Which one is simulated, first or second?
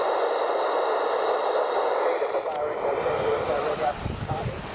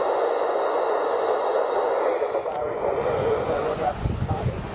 second